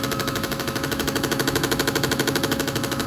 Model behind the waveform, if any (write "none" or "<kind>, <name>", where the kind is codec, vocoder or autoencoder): autoencoder, DAC-VAE